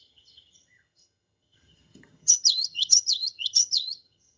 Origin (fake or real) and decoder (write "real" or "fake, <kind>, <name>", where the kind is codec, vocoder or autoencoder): fake, vocoder, HiFi-GAN